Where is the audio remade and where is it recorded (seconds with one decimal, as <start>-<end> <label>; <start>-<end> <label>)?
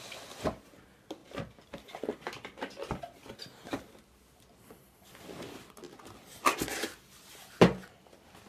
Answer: 0.0-8.5 recorded